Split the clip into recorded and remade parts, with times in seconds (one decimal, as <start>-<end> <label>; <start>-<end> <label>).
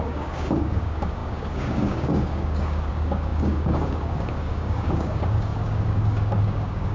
0.0-6.9 remade